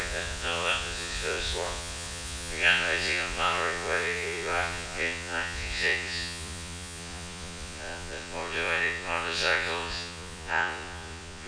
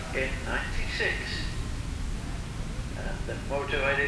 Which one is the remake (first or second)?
first